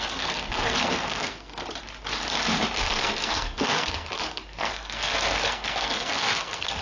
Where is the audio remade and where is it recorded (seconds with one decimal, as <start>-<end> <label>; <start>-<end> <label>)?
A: 0.0-1.5 remade; 1.5-2.8 recorded; 2.8-6.8 remade

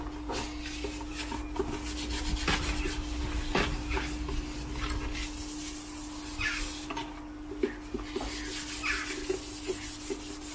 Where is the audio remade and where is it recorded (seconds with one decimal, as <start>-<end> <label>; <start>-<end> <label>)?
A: 0.0-10.5 recorded

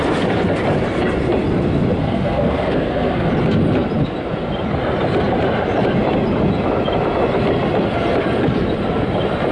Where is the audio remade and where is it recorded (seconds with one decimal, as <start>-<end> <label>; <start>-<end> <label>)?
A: 0.0-2.0 recorded; 2.0-3.3 remade; 3.3-9.5 recorded